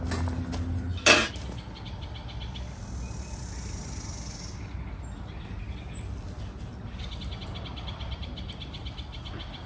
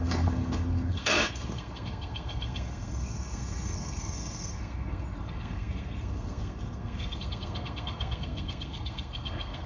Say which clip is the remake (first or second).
second